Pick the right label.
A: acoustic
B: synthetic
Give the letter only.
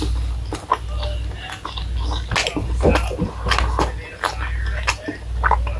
A